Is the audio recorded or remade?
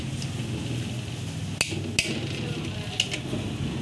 recorded